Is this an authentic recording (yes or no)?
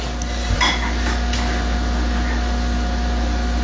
yes